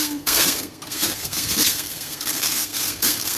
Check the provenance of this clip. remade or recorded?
remade